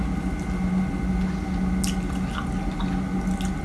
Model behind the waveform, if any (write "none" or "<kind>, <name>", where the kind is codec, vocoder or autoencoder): none